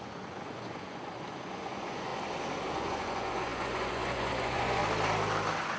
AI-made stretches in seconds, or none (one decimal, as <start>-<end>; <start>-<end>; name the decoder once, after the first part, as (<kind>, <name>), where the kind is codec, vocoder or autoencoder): 0.0-2.1 (vocoder, Vocos); 2.7-4.8